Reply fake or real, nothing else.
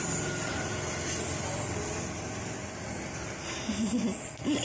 real